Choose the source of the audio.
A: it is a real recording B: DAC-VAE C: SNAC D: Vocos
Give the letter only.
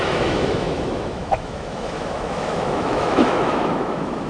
B